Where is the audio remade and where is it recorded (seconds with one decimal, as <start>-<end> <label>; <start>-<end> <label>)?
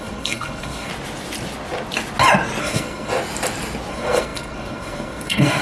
0.0-0.9 remade; 0.9-2.6 recorded; 2.6-3.1 remade; 3.1-3.9 recorded; 3.9-5.6 remade